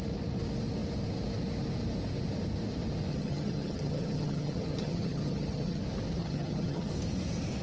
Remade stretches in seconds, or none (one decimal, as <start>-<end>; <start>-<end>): 3.1-5.8; 6.2-6.9